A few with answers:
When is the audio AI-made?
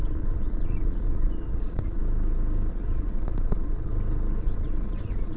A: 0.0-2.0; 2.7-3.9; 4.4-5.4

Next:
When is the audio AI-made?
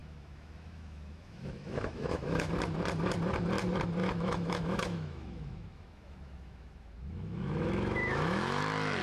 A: 0.0-2.5; 4.0-8.6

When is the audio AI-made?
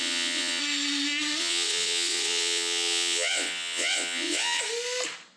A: 0.0-0.6; 1.4-4.6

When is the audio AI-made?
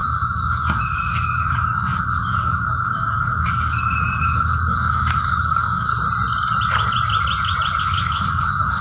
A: 0.0-5.9; 7.8-8.8